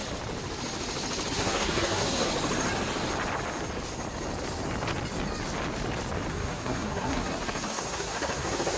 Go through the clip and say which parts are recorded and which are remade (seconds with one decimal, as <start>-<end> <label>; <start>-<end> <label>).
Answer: 0.0-1.3 recorded; 1.3-2.3 remade; 2.3-6.3 recorded; 6.3-8.8 remade